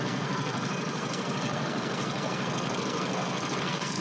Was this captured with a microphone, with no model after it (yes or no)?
no